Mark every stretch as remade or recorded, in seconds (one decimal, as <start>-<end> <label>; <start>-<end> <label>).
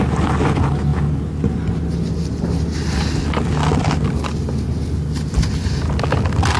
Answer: 0.0-6.6 recorded